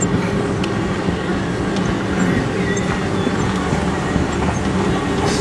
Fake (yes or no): no